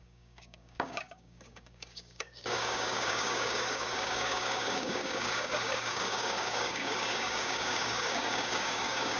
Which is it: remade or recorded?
remade